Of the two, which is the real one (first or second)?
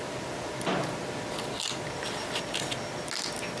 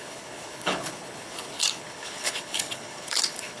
first